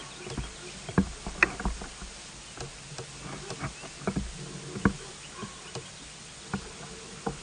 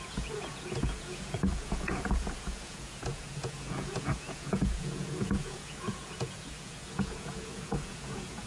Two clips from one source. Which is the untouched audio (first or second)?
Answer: first